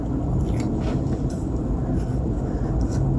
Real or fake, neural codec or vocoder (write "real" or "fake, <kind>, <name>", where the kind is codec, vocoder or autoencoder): real